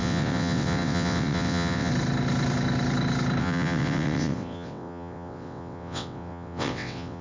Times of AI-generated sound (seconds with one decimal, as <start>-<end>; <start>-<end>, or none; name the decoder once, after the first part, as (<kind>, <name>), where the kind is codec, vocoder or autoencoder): 0.0-1.9 (vocoder, WaveNeXt); 3.4-7.2